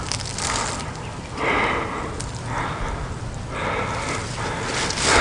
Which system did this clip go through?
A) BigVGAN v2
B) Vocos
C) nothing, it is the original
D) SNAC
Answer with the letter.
C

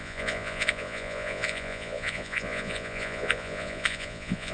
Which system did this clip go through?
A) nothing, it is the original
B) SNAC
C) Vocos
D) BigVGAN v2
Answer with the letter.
C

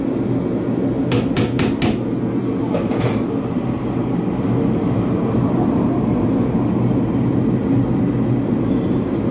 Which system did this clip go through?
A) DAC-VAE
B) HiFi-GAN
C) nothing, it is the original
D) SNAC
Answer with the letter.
C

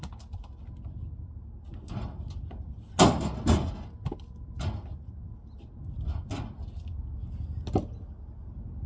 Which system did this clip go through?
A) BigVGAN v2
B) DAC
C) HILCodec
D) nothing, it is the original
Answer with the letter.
D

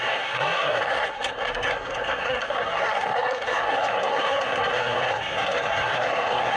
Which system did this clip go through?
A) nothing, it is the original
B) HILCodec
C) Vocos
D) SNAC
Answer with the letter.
D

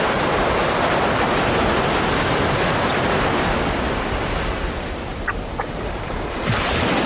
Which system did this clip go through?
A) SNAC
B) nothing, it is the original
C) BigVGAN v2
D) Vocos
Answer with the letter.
B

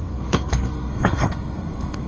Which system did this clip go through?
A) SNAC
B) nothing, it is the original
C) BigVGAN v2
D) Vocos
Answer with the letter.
A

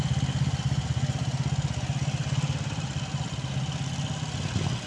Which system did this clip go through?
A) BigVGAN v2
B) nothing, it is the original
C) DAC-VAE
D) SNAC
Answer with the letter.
B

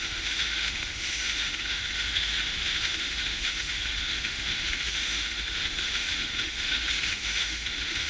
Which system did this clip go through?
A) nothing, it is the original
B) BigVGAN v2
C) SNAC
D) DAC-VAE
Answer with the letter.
D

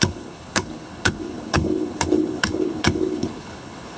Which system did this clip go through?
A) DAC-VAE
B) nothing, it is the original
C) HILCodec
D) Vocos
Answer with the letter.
C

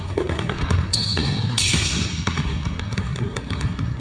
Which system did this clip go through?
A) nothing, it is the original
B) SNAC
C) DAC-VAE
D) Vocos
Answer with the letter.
B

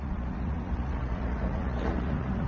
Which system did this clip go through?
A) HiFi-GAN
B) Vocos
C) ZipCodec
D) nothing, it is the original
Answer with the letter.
B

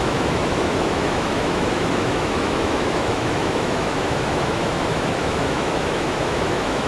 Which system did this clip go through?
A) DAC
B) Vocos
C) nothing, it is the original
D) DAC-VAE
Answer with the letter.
D